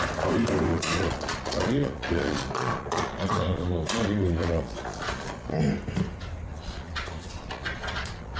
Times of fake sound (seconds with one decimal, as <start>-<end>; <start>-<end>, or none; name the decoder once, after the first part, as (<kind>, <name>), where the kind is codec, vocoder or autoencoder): 0.7-5.6 (vocoder, Vocos); 6.5-8.4